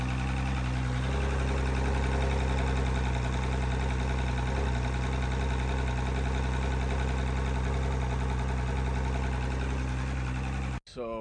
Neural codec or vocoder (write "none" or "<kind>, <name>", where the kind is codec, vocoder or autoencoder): none